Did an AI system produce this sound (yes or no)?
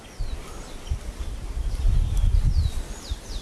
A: no